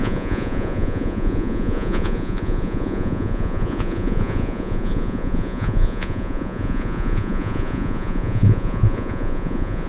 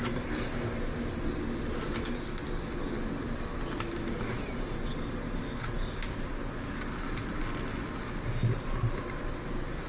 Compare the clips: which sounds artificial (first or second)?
first